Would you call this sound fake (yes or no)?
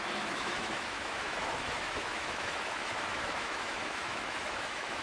yes